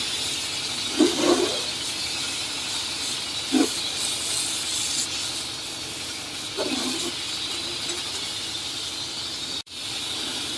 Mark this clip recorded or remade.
recorded